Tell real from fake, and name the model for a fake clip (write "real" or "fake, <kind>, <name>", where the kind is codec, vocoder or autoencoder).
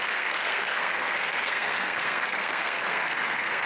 fake, codec, SNAC